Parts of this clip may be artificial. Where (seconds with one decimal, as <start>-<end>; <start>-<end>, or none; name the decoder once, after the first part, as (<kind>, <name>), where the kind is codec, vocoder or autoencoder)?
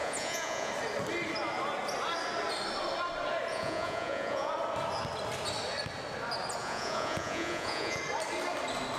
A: 0.0-0.7 (vocoder, Vocos); 3.5-4.5; 6.6-8.0